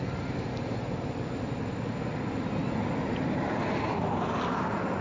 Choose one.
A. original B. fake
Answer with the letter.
A